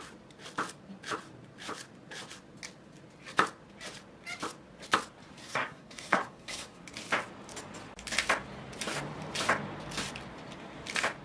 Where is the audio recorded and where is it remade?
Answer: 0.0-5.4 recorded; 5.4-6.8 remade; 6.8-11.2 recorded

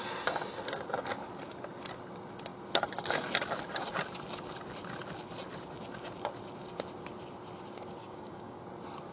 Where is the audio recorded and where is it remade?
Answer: 0.0-8.0 recorded; 8.0-8.6 remade; 8.6-9.1 recorded

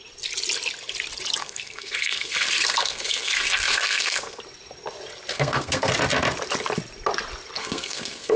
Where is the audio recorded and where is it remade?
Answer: 0.0-1.4 recorded; 1.4-4.4 remade; 4.4-5.3 recorded; 5.3-5.9 remade; 5.9-7.6 recorded; 7.6-8.4 remade

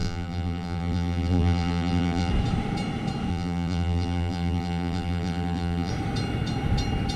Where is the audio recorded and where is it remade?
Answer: 0.0-2.3 remade; 2.3-3.3 recorded; 3.3-5.9 remade; 5.9-7.2 recorded

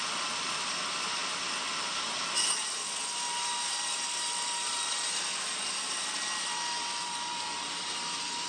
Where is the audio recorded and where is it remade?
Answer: 0.0-1.2 remade; 1.2-3.0 recorded; 3.0-8.5 remade